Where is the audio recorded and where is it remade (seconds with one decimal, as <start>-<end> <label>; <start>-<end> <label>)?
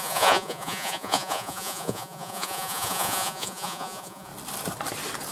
0.0-4.3 remade; 4.3-5.3 recorded